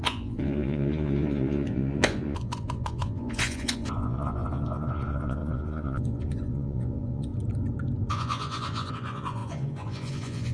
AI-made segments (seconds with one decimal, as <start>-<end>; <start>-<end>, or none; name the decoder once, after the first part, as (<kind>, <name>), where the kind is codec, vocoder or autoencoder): 0.0-7.3 (vocoder, Vocos); 8.1-10.5